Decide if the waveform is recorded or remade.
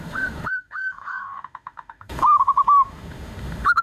remade